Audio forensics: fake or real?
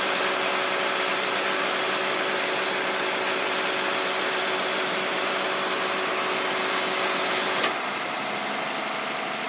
real